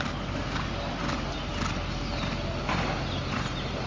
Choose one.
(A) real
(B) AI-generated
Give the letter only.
A